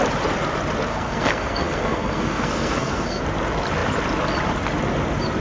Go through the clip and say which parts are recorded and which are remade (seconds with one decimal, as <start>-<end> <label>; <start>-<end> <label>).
0.0-0.9 recorded; 0.9-3.2 remade; 3.2-5.4 recorded